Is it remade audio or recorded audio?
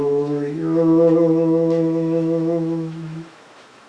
remade